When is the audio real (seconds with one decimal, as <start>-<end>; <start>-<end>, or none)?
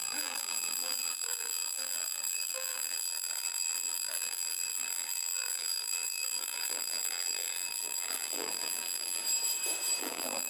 9.2-10.0